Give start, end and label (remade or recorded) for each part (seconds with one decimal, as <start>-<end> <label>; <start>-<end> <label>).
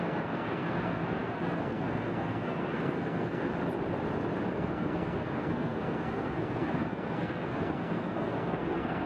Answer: 0.0-3.5 remade; 3.5-4.5 recorded; 4.5-9.1 remade